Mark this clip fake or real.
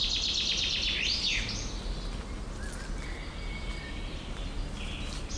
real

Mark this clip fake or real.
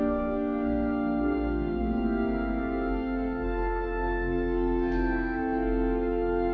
fake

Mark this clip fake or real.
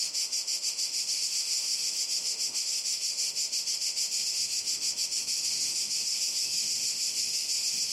fake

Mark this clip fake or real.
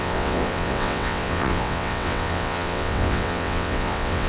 fake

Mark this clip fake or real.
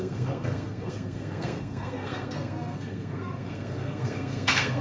fake